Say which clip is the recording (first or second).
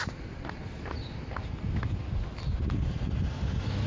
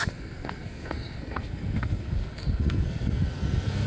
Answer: first